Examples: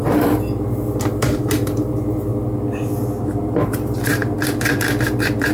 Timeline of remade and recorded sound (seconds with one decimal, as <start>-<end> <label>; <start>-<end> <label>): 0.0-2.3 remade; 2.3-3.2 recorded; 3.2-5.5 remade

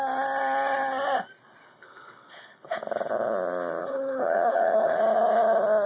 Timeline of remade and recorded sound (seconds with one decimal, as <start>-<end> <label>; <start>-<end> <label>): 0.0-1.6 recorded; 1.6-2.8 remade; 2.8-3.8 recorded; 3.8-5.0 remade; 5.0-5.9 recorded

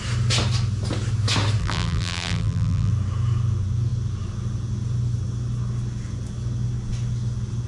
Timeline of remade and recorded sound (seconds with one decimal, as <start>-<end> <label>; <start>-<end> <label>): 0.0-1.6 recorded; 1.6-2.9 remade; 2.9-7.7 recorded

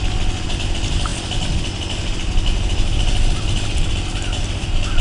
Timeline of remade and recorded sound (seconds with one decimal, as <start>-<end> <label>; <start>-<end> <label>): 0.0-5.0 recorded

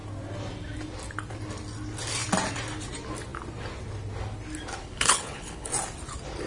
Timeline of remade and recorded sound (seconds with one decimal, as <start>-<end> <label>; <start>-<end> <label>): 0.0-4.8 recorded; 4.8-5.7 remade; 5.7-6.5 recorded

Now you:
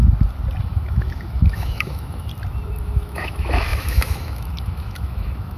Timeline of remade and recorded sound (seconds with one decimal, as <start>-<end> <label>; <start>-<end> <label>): 0.0-0.6 recorded; 0.6-2.3 remade; 2.3-2.8 recorded; 2.8-5.6 remade

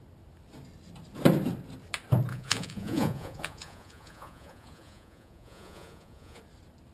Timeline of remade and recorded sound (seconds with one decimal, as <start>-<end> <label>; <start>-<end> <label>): 0.0-2.3 recorded; 2.3-6.4 remade; 6.4-6.9 recorded